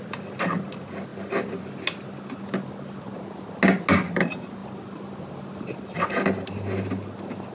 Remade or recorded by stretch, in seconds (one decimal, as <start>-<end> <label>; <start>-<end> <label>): 0.0-7.5 recorded